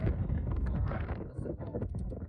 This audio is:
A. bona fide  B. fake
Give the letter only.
B